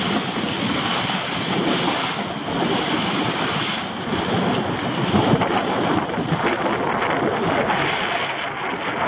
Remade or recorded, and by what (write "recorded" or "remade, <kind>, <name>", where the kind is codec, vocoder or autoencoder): recorded